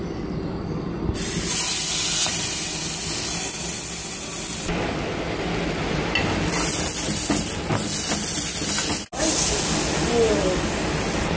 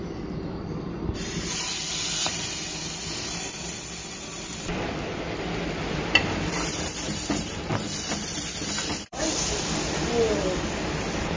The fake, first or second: second